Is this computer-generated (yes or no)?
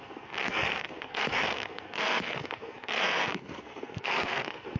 yes